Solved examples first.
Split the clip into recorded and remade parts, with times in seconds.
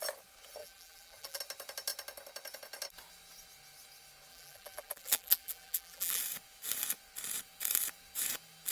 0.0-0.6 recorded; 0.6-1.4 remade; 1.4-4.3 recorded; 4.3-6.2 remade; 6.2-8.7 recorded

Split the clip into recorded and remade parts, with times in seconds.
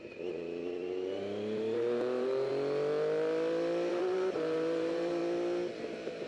0.0-2.5 remade; 2.5-3.9 recorded; 3.9-5.2 remade; 5.2-5.8 recorded; 5.8-6.3 remade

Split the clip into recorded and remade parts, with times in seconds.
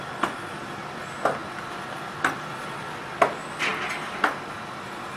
0.0-5.2 recorded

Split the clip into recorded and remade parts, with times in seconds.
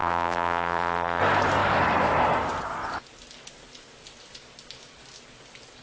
0.0-1.2 remade; 1.2-5.8 recorded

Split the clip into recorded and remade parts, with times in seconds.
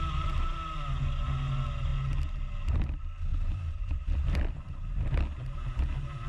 0.0-3.3 recorded; 3.3-6.3 remade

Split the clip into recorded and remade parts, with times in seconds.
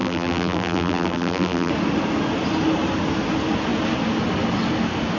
0.0-1.7 remade; 1.7-5.2 recorded